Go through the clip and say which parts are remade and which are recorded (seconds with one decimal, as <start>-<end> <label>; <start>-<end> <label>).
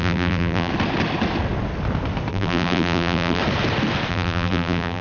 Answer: 0.0-0.7 remade; 0.7-2.3 recorded; 2.3-3.4 remade; 3.4-4.1 recorded; 4.1-5.0 remade